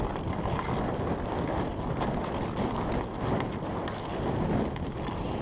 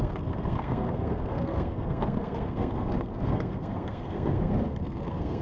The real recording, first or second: first